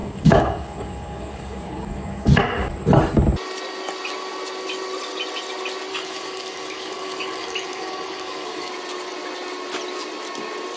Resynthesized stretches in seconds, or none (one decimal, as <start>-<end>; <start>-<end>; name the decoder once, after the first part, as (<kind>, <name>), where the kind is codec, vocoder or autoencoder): 0.0-2.3 (codec, DAC); 5.9-8.7

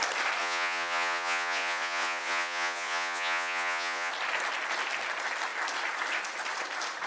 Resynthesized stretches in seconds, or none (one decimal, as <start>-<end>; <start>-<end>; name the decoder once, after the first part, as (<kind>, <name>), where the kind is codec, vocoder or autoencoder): 0.4-4.1 (vocoder, Vocos)

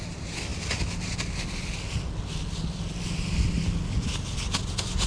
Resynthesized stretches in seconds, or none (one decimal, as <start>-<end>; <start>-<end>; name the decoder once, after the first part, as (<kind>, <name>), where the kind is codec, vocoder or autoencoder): none

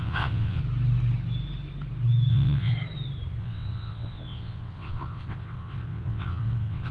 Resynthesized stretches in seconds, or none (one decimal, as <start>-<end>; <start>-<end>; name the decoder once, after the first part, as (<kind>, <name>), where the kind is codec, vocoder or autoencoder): 0.0-0.6 (vocoder, WaveNeXt); 2.3-2.7; 3.4-6.9

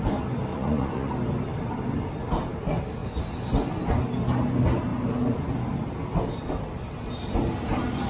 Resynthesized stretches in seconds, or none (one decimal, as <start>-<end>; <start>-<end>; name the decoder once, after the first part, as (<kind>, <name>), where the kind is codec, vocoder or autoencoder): 0.5-1.1 (vocoder, Vocos)

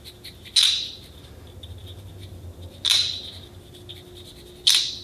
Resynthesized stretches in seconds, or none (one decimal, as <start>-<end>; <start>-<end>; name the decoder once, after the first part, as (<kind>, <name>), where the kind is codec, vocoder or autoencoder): none

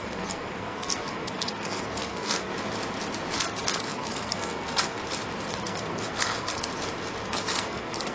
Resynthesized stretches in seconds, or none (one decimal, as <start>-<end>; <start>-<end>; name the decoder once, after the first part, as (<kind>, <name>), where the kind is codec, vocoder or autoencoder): 0.0-2.5 (codec, SNAC); 3.4-5.0; 5.5-6.7; 7.3-8.1